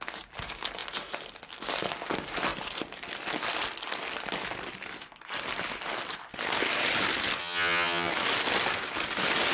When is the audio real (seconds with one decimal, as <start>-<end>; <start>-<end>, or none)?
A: 0.0-7.4; 8.1-9.5